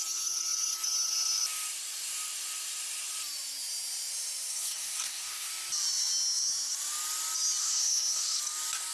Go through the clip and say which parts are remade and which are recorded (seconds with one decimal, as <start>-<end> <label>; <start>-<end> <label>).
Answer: 0.0-4.5 recorded; 4.5-5.5 remade; 5.5-7.6 recorded; 7.6-8.4 remade; 8.4-8.9 recorded